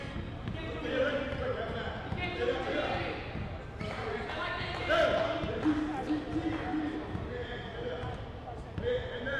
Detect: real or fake real